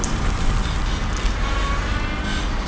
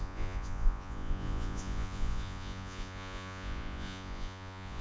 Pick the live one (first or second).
first